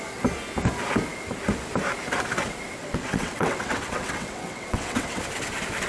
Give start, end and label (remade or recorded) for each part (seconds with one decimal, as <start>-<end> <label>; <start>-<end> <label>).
0.0-2.8 recorded; 2.8-5.2 remade; 5.2-5.9 recorded